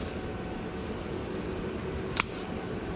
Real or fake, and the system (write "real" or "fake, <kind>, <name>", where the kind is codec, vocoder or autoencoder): real